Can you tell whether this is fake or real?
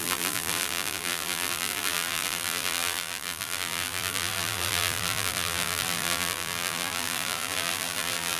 fake